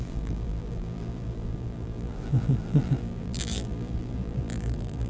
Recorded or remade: remade